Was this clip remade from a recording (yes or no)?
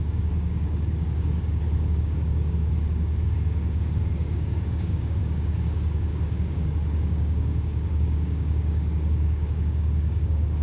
yes